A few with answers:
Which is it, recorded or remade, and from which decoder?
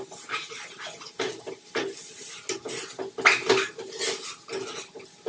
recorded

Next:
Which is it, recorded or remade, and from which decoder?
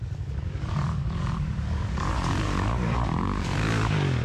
remade, codec, DAC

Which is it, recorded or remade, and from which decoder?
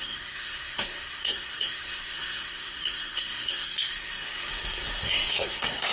remade, codec, SNAC